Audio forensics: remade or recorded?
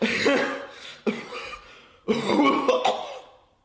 recorded